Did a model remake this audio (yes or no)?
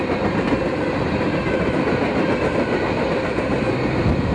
no